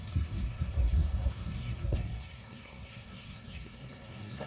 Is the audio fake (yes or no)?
yes